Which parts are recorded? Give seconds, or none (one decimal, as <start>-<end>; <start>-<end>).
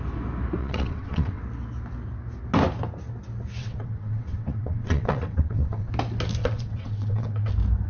0.0-0.6; 1.4-3.6; 5.9-6.4; 7.5-7.9